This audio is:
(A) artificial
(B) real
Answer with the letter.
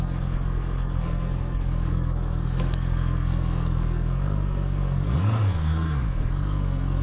A